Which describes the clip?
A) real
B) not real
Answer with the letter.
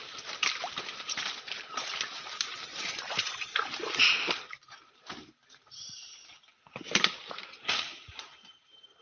B